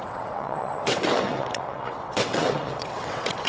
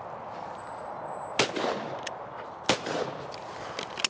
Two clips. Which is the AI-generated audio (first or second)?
first